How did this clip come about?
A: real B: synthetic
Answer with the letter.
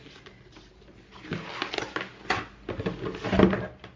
A